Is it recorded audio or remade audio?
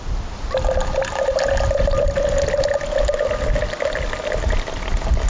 recorded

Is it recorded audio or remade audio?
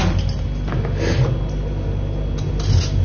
recorded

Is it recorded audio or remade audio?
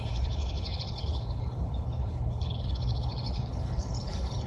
remade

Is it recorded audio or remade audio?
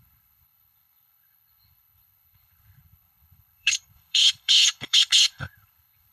remade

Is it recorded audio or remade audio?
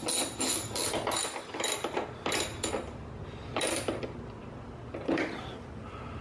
recorded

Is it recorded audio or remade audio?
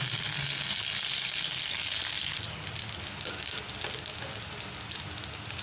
recorded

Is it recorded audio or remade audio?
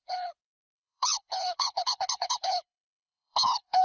remade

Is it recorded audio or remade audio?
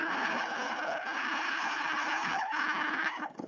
remade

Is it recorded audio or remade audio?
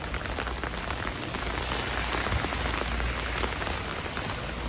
recorded